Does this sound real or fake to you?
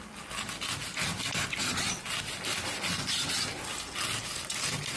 real